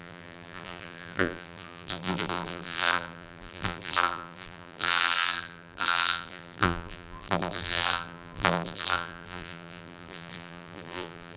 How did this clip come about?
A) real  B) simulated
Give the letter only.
B